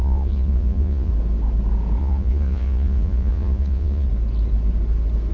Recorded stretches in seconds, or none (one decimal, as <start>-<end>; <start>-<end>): 1.1-2.0; 4.1-5.3